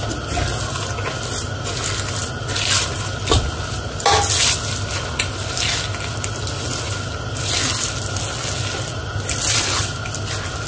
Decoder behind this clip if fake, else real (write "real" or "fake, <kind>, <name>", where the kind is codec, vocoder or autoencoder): real